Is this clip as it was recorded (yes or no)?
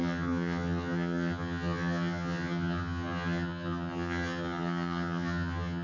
no